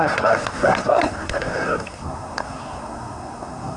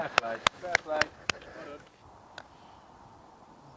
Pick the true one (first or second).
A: second